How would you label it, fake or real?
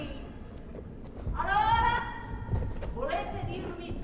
real